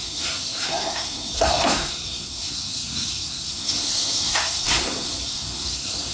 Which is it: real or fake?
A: fake